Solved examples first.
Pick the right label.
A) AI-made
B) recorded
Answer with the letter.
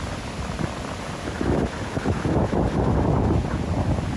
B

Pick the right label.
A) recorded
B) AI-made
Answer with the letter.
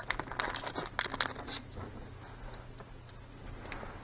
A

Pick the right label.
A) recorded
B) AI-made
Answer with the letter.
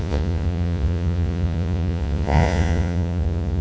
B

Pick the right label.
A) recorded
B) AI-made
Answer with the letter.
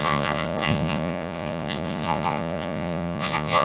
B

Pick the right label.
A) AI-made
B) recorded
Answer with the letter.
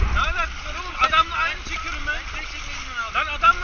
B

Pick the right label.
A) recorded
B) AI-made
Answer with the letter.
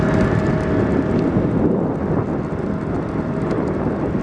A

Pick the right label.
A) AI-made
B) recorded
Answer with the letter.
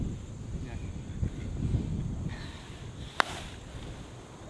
B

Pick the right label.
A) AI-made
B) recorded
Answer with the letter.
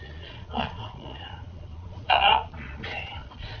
A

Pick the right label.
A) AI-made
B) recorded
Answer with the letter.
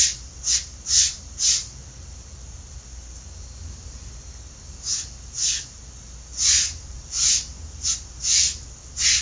B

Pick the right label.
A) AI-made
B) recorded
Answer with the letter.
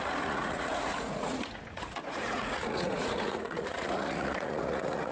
A